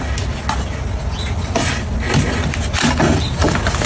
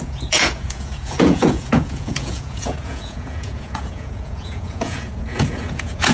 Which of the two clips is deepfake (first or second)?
second